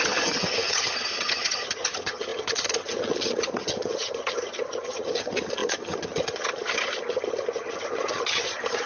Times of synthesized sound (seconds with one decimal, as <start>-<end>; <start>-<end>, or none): 0.0-8.9